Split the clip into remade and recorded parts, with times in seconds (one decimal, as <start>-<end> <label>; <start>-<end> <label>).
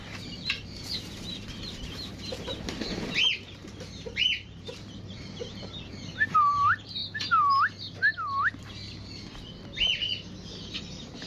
0.0-7.0 remade; 7.0-10.8 recorded; 10.8-11.3 remade